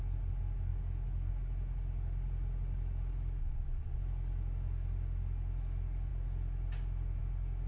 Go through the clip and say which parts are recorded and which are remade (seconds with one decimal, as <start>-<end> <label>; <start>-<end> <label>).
0.0-3.4 recorded; 3.4-4.0 remade; 4.0-7.7 recorded